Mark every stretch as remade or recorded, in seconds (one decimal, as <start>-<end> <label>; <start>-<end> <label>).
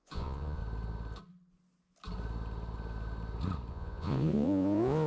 0.0-0.6 remade; 0.6-3.7 recorded; 3.7-5.1 remade